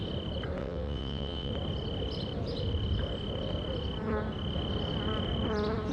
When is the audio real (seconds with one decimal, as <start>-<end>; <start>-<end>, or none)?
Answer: 0.0-0.6; 1.5-5.9